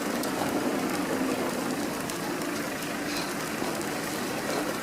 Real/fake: real